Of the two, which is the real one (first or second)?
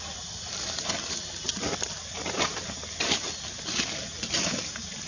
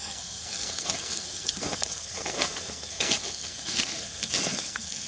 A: first